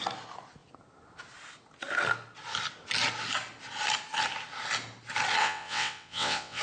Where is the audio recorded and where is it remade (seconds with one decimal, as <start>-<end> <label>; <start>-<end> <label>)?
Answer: 0.0-5.4 recorded; 5.4-6.6 remade